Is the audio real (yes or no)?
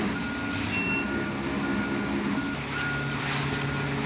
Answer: yes